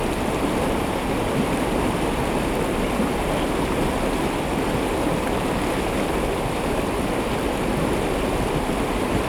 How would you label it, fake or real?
real